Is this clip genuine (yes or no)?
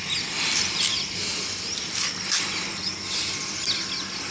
yes